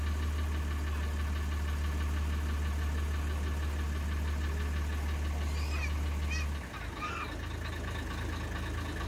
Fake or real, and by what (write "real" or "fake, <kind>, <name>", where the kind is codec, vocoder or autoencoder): real